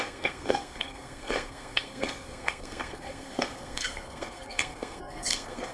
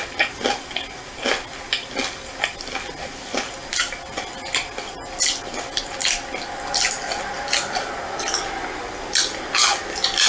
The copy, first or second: first